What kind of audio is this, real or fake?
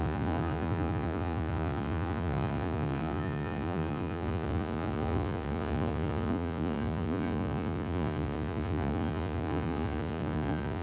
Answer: fake